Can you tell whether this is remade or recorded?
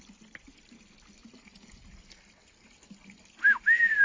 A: recorded